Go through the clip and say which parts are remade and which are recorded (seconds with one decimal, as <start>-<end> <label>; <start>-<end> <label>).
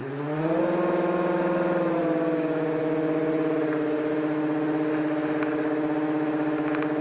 0.0-7.0 recorded